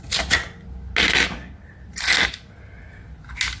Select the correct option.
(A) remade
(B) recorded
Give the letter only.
B